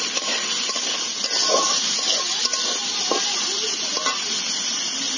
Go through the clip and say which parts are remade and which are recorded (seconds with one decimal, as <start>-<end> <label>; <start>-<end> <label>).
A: 0.0-5.2 recorded